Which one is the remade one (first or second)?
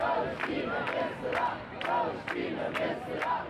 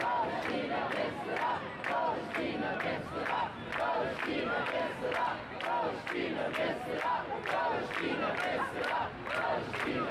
first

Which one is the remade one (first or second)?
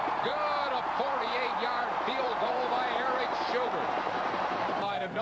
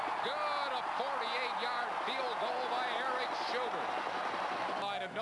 first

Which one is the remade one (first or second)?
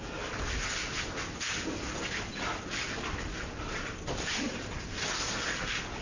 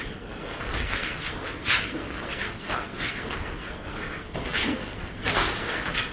second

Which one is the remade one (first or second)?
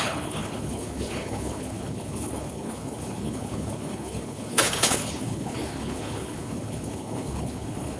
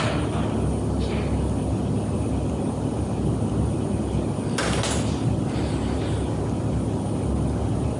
first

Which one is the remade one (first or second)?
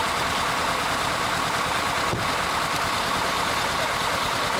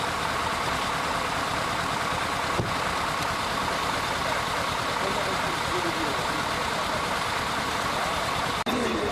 second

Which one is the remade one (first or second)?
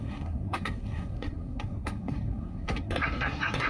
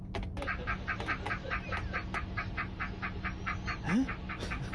first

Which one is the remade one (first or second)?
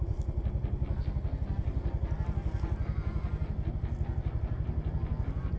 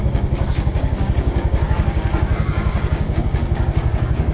second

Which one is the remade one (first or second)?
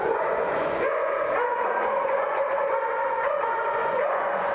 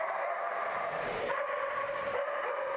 first